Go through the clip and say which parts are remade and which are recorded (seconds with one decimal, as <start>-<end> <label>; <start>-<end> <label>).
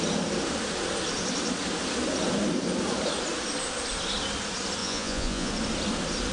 0.0-4.8 recorded; 4.8-5.5 remade; 5.5-6.3 recorded